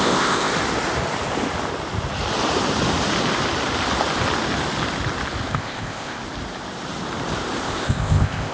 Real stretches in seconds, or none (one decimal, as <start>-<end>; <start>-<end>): 0.5-5.5; 6.2-7.6